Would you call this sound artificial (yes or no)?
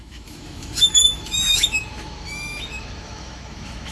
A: yes